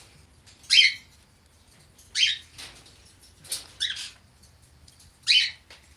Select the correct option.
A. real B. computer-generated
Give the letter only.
A